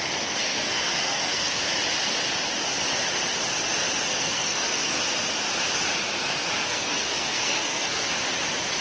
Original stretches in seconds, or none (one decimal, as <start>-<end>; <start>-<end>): 0.0-0.4; 1.6-4.1; 5.0-6.2; 8.1-8.8